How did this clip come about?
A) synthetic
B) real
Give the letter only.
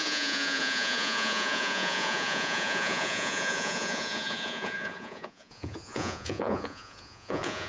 A